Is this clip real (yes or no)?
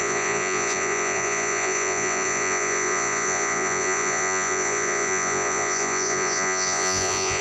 no